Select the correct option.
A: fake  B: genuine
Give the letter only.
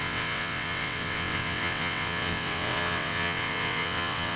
A